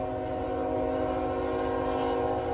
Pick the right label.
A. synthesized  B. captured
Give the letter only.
B